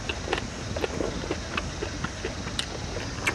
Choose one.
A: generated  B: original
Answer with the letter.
B